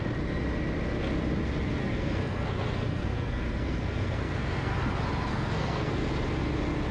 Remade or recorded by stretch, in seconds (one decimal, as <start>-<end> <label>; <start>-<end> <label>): 0.0-1.8 recorded; 1.8-4.8 remade; 4.8-5.3 recorded; 5.3-5.9 remade; 5.9-6.9 recorded